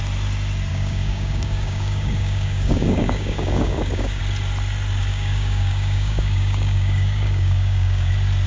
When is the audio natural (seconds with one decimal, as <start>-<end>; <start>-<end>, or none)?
0.0-0.7; 4.2-5.1; 8.1-8.5